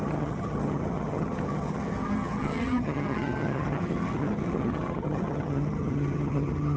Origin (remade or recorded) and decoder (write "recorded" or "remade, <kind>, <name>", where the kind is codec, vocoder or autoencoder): remade, vocoder, HiFi-GAN